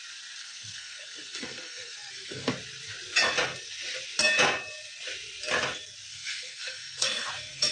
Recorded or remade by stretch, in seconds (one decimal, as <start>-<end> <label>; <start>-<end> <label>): 0.0-0.4 recorded; 0.4-2.5 remade; 2.5-6.1 recorded; 6.1-7.7 remade